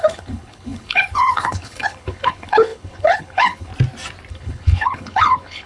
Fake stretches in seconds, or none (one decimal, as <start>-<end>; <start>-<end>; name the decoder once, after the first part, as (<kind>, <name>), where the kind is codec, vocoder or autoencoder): 0.0-3.7 (codec, HILCodec); 4.3-5.7